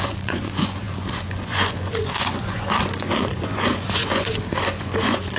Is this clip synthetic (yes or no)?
yes